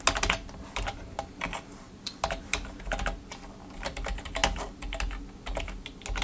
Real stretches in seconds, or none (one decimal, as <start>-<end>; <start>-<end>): 0.0-6.2